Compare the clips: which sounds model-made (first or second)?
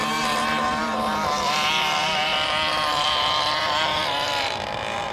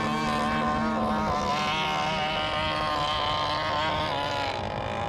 first